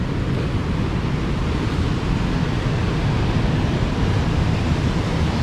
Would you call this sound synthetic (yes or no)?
no